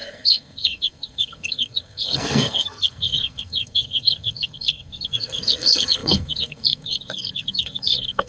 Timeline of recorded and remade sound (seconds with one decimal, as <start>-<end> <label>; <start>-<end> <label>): 0.0-8.3 remade